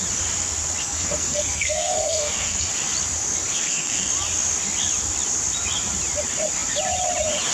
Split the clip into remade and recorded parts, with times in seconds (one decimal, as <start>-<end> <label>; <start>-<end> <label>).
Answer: 0.0-0.8 recorded; 0.8-2.7 remade; 2.7-3.5 recorded; 3.5-4.1 remade; 4.1-7.5 recorded